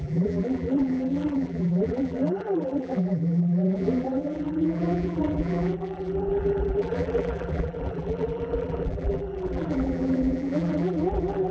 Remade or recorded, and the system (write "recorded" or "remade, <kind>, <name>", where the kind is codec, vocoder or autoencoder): remade, vocoder, BigVGAN v2